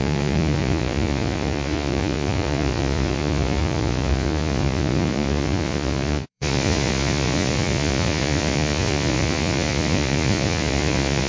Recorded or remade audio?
remade